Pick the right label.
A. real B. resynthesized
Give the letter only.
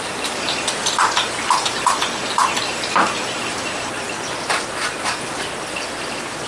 A